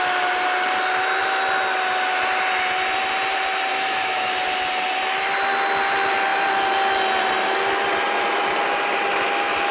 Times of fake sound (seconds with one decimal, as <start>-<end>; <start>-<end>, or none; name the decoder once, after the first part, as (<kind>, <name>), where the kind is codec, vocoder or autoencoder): 3.7-4.3 (autoencoder, DAC-VAE)